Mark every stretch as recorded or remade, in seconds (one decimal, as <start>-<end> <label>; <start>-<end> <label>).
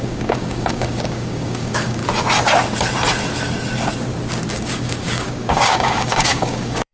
0.0-2.0 remade; 2.0-4.5 recorded; 4.5-6.9 remade